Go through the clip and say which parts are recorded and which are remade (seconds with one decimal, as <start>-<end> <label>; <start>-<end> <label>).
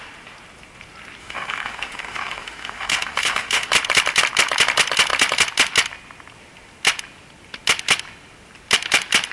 0.0-1.2 recorded; 1.2-3.7 remade; 3.7-9.3 recorded